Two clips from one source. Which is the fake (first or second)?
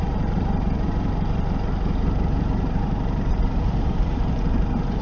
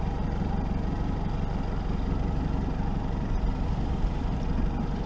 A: first